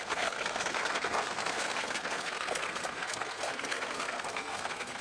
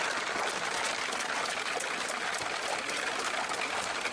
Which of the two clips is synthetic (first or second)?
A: first